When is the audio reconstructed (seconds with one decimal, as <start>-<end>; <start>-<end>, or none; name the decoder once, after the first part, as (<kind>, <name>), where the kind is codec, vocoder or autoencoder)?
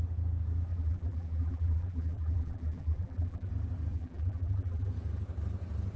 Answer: 0.7-3.5 (vocoder, BigVGAN v2); 3.9-4.9